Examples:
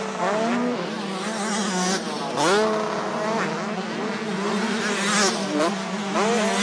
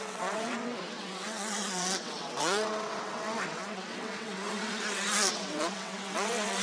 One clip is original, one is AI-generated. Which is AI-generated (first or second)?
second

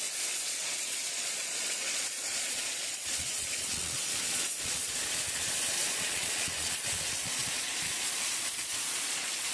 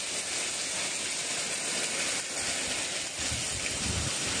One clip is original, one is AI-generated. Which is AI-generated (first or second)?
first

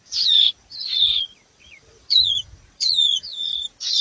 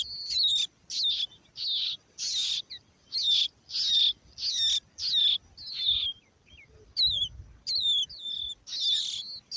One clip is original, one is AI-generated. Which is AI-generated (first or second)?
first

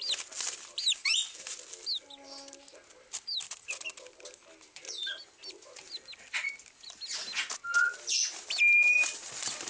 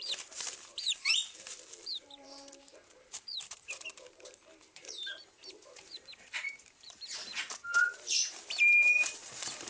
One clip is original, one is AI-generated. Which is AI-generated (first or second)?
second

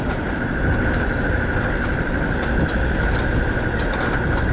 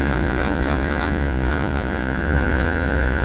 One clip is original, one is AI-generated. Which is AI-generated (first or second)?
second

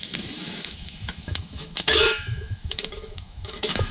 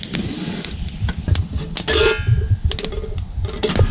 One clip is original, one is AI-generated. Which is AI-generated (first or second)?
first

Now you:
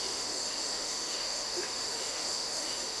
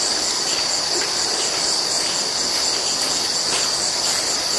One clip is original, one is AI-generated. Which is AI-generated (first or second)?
first